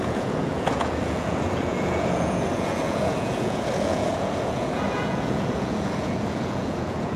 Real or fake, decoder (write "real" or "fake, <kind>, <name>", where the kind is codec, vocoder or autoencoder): fake, vocoder, Vocos